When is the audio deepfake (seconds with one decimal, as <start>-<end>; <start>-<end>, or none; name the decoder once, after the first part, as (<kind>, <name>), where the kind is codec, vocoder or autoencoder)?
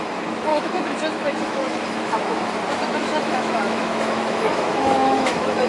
0.5-2.5 (autoencoder, DAC-VAE); 2.9-5.7